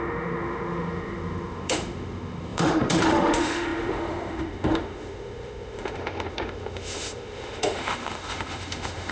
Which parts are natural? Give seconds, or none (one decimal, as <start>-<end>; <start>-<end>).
none